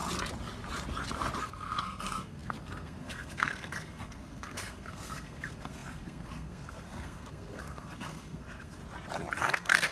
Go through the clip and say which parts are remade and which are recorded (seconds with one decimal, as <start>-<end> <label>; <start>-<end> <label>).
0.0-1.4 recorded; 1.4-8.8 remade; 8.8-9.4 recorded; 9.4-9.9 remade